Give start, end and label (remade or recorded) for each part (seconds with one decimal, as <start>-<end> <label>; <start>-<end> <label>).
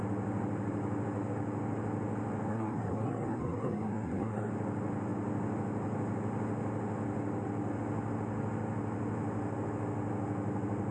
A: 0.0-2.5 recorded; 2.5-4.5 remade; 4.5-10.9 recorded